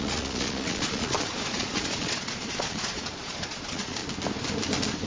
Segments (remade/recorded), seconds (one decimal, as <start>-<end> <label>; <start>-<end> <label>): 0.0-4.0 remade; 4.0-5.1 recorded